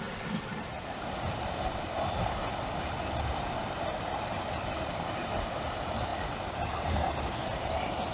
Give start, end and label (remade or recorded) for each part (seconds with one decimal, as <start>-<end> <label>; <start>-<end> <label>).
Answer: 0.0-2.4 remade; 2.4-4.3 recorded; 4.3-6.1 remade; 6.1-6.7 recorded; 6.7-7.4 remade; 7.4-8.1 recorded